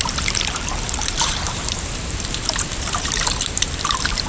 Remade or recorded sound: remade